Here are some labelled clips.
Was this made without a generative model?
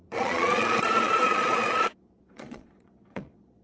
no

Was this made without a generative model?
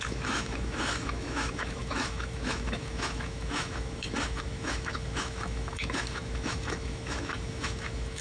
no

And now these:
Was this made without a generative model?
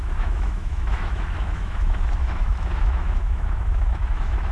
no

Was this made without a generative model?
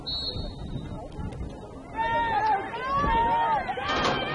yes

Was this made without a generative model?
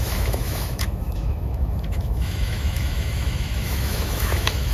no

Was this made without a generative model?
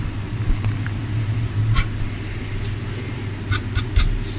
yes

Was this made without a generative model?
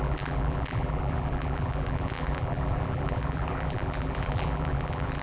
no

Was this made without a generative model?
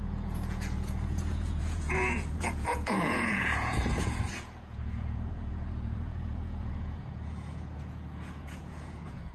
no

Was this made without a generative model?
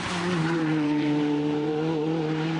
no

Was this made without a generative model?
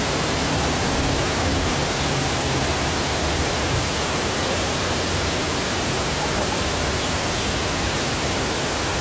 yes